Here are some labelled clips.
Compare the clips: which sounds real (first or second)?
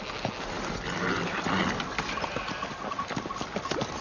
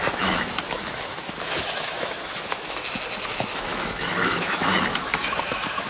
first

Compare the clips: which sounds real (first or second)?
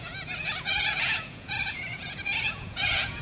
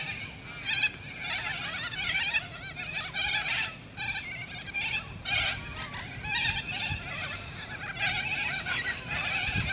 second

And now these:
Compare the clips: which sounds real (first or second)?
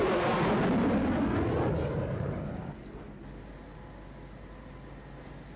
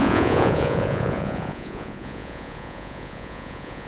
first